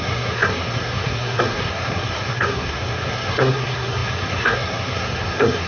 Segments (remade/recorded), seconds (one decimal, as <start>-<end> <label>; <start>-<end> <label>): 0.0-5.7 remade